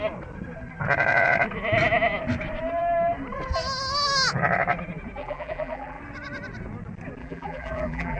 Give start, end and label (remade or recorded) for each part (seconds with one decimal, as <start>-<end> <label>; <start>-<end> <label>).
0.0-5.2 recorded; 5.2-6.0 remade; 6.0-7.2 recorded; 7.2-8.2 remade